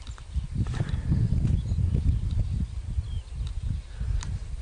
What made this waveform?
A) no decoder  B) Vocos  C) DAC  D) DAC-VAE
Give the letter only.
A